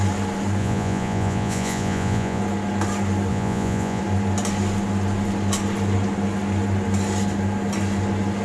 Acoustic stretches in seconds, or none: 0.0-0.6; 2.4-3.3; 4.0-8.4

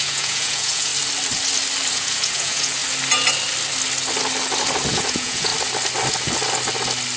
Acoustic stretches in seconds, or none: 0.9-1.9; 2.8-4.9; 5.5-7.2

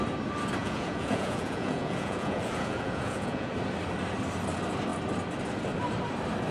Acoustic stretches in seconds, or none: 0.0-0.6; 3.5-6.5